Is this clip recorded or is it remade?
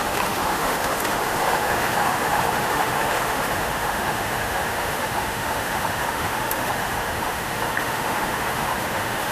remade